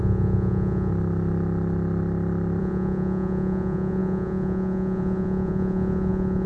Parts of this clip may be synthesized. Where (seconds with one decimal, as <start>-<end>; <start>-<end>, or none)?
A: 0.0-0.9; 2.6-6.5